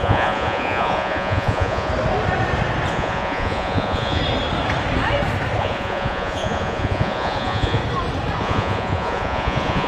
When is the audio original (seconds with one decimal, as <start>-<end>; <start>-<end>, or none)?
1.9-2.9; 4.2-5.6; 7.8-8.4